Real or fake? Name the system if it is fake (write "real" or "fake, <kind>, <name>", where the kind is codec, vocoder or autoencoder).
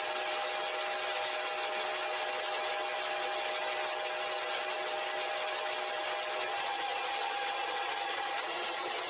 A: real